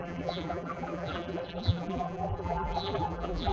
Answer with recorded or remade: remade